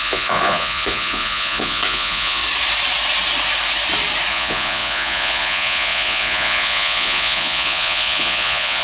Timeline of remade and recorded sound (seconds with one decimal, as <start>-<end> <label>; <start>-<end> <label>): 0.0-2.4 remade; 2.4-4.3 recorded; 4.3-8.8 remade